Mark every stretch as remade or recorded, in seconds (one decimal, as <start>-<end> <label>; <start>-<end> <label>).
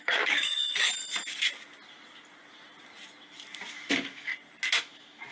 0.0-0.9 remade; 0.9-3.7 recorded; 3.7-4.3 remade; 4.3-4.8 recorded; 4.8-5.3 remade